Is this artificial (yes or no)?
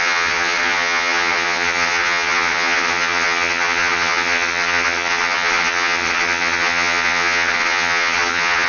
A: yes